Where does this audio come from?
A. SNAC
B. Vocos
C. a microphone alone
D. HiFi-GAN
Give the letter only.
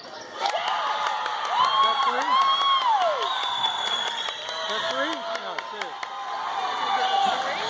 C